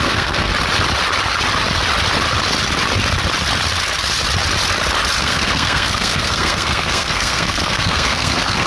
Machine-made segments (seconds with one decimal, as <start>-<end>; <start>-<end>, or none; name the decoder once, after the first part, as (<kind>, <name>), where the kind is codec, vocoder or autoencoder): 0.0-0.5 (codec, SNAC); 5.2-8.7